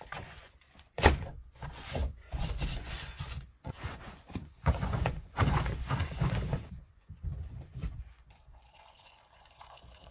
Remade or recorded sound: remade